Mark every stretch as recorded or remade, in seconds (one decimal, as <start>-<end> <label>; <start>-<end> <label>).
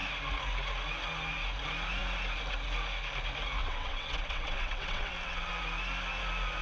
0.0-3.6 recorded; 3.6-5.5 remade; 5.5-6.6 recorded